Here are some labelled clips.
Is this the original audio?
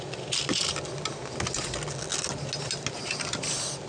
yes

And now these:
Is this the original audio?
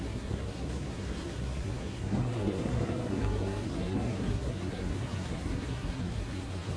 no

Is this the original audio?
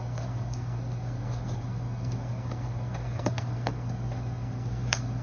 no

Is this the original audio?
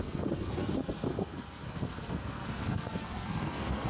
no